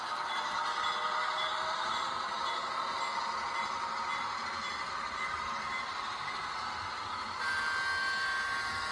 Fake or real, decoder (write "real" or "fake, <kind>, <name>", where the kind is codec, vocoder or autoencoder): real